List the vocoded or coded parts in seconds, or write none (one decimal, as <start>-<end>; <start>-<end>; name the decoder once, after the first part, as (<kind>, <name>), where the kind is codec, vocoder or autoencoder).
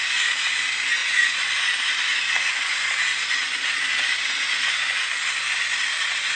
1.0-1.5 (vocoder, Vocos); 2.1-2.9